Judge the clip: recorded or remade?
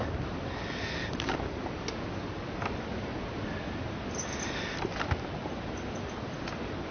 recorded